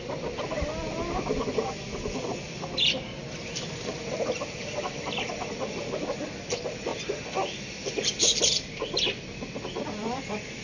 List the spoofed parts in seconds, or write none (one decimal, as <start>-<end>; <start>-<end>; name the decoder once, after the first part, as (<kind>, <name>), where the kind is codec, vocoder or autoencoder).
none